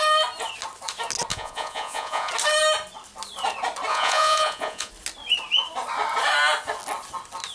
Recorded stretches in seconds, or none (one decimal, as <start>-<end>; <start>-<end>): 0.0-1.3; 2.3-3.9; 4.9-7.5